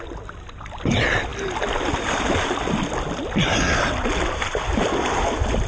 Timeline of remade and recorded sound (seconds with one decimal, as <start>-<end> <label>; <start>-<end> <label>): 0.0-5.7 recorded